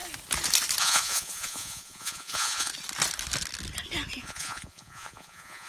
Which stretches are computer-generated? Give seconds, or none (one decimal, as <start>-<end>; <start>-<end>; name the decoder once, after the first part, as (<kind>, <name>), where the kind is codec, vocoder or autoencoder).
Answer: 0.8-2.7 (vocoder, Vocos); 4.2-5.7